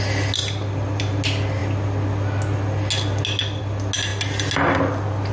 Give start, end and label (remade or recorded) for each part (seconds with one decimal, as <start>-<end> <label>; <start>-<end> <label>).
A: 0.0-5.3 recorded